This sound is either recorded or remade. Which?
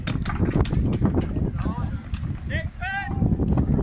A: recorded